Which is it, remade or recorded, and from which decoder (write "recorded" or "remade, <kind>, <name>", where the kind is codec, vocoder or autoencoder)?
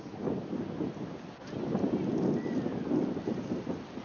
recorded